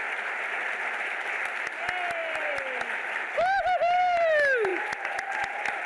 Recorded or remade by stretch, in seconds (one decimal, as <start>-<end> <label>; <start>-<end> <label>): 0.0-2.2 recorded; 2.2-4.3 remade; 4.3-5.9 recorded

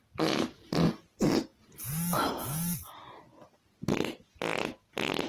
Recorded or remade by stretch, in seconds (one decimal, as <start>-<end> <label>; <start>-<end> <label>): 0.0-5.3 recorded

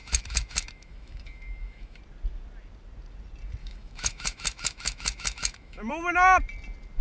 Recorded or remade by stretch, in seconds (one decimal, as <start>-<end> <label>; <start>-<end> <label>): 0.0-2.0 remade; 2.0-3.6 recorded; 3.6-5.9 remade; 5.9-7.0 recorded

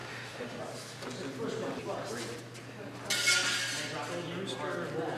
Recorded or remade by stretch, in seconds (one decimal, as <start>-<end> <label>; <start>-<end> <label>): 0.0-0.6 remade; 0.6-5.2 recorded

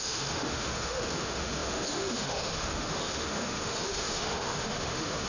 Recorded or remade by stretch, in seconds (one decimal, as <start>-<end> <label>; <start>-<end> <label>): 0.0-5.3 remade

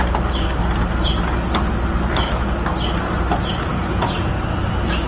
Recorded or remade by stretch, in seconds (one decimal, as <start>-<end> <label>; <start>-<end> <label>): 0.0-3.7 recorded; 3.7-4.3 remade; 4.3-5.1 recorded

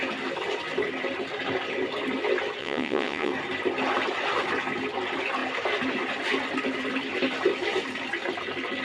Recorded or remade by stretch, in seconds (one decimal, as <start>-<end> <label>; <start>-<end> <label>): 0.0-2.6 recorded; 2.6-3.3 remade; 3.3-8.8 recorded